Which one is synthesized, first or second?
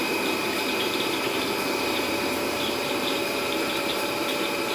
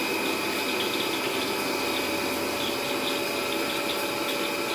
first